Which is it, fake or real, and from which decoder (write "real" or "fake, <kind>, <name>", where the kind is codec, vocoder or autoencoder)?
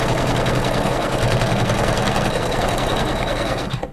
fake, codec, SNAC